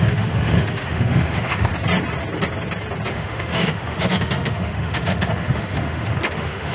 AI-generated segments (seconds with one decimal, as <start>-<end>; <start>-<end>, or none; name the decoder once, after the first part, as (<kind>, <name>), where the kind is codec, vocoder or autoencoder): 0.0-1.7 (autoencoder, DAC-VAE); 3.1-6.7

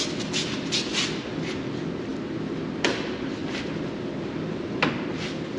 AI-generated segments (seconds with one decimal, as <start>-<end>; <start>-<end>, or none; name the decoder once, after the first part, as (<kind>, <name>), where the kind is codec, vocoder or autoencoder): none

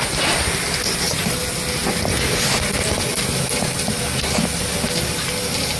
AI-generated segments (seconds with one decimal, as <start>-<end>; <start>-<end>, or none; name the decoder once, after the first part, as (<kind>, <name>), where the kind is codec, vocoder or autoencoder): none

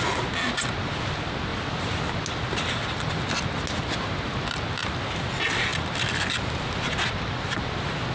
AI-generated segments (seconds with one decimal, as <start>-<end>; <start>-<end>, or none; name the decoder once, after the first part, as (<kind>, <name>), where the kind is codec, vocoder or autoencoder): none

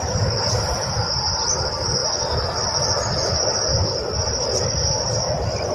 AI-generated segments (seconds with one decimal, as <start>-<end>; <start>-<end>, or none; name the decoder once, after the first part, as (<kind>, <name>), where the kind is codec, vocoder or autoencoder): none

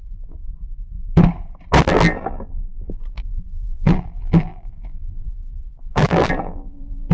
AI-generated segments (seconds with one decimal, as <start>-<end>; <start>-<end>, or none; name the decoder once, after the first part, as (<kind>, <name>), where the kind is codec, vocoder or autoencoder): 0.0-0.4 (vocoder, BigVGAN v2); 1.8-7.1

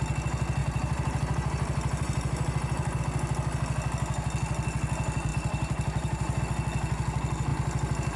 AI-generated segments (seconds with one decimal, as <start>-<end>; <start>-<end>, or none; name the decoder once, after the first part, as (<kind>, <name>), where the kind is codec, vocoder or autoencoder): 0.6-3.0 (vocoder, BigVGAN v2); 5.3-6.4; 7.5-8.2